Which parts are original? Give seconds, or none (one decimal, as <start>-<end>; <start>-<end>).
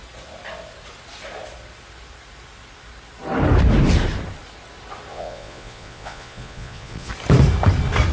0.0-5.1; 7.1-8.1